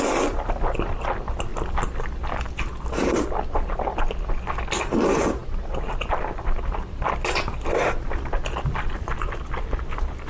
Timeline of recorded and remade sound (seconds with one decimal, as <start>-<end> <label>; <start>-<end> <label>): 0.0-10.3 recorded